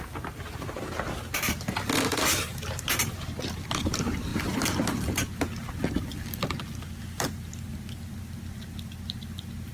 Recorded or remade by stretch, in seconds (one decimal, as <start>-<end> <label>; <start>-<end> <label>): 0.0-4.3 remade; 4.3-7.0 recorded; 7.0-7.7 remade; 7.7-9.7 recorded